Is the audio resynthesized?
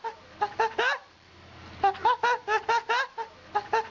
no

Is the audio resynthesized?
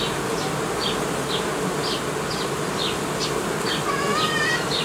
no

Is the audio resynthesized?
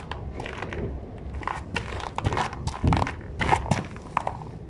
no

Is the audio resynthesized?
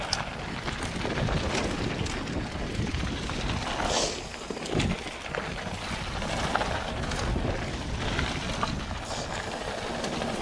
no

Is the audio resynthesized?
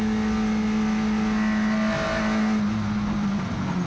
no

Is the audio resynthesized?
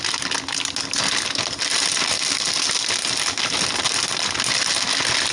no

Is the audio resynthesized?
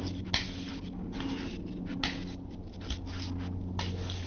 no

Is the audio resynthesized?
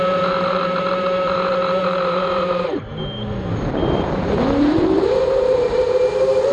yes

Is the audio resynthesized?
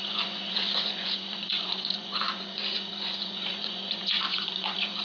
yes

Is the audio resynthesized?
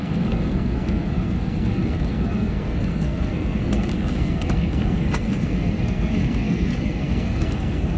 yes